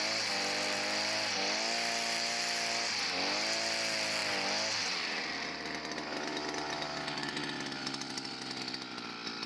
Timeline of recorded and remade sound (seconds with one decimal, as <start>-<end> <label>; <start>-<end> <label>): 0.0-9.5 recorded